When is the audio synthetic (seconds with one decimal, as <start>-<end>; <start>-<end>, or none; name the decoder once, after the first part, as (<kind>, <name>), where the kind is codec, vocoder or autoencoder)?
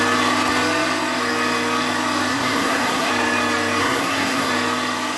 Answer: 2.3-3.1 (codec, SNAC); 3.8-4.5